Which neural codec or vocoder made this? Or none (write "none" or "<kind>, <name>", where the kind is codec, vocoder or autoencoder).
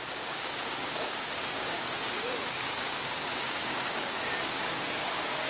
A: codec, DAC